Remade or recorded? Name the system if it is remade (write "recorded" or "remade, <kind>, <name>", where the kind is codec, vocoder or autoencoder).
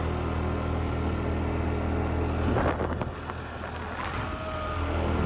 recorded